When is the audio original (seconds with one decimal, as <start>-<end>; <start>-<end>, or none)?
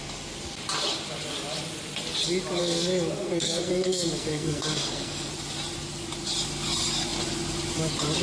0.0-2.6; 5.3-8.2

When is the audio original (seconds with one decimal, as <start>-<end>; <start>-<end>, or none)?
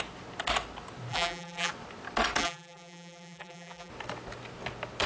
0.0-1.1; 1.7-2.4; 3.9-5.1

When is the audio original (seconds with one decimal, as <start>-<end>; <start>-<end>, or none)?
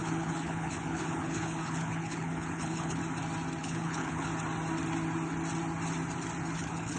3.0-3.6; 4.3-6.5